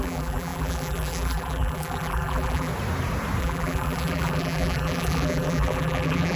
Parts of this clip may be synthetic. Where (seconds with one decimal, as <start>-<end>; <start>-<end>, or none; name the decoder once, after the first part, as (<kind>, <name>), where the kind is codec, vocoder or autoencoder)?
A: 0.0-2.7 (vocoder, BigVGAN v2); 3.4-6.4